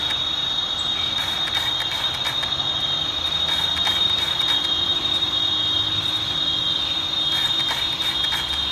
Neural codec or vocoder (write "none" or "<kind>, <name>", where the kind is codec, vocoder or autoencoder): none